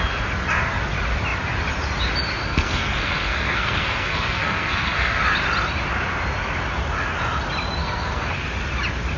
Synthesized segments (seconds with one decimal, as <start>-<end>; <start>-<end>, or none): 2.4-5.2; 7.8-8.3